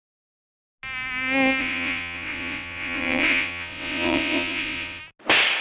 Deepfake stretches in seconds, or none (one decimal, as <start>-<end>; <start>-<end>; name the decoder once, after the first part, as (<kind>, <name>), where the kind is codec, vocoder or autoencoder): 1.6-5.0 (vocoder, WaveNeXt)